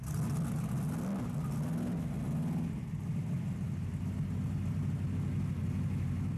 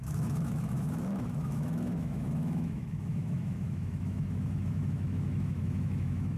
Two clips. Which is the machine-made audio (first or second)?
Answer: second